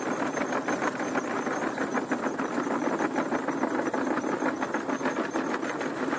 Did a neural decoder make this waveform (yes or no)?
no